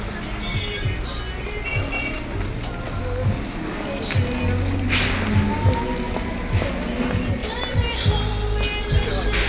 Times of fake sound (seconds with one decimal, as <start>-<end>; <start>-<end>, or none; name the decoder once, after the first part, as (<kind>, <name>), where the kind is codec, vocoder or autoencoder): none